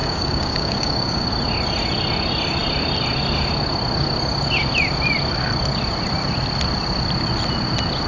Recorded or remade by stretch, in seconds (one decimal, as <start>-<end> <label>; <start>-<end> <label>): 0.0-1.3 remade; 1.3-8.1 recorded